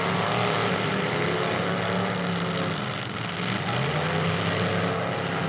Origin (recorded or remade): recorded